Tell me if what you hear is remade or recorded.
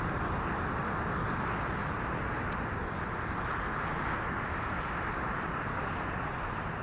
recorded